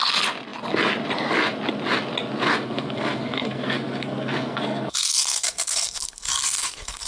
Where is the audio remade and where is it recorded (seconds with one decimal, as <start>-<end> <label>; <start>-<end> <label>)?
0.0-2.5 recorded; 2.5-7.1 remade